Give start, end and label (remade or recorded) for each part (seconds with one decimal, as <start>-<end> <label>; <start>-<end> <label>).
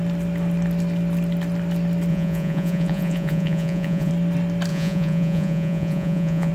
0.0-2.1 recorded; 2.1-4.1 remade; 4.1-4.7 recorded; 4.7-6.5 remade